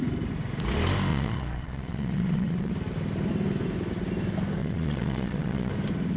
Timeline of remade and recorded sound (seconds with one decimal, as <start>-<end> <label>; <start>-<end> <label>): 0.0-1.1 recorded; 1.1-2.7 remade; 2.7-4.6 recorded; 4.6-5.7 remade; 5.7-6.2 recorded